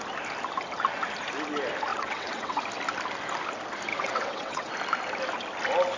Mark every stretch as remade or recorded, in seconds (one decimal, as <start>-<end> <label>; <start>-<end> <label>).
0.0-1.9 recorded; 1.9-2.6 remade; 2.6-3.9 recorded; 3.9-4.7 remade; 4.7-6.0 recorded